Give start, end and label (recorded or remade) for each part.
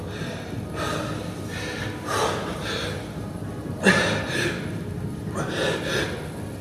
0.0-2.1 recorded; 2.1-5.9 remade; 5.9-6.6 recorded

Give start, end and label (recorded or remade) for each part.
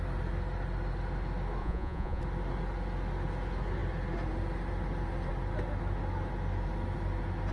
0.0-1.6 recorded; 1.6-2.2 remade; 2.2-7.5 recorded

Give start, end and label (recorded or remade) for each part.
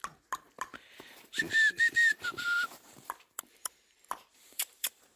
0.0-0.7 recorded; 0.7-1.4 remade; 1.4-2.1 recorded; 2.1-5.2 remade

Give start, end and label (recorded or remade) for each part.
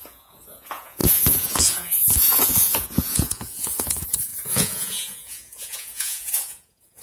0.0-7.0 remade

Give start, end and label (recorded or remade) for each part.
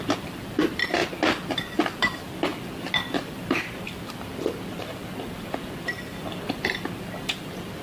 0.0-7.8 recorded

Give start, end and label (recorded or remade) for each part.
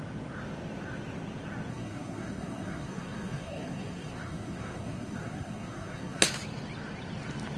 0.0-1.7 recorded; 1.7-6.2 remade; 6.2-7.6 recorded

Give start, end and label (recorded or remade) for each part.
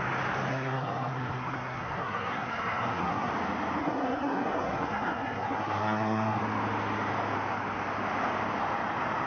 0.0-0.5 recorded; 0.5-3.3 remade; 3.3-3.8 recorded; 3.8-6.4 remade; 6.4-9.3 recorded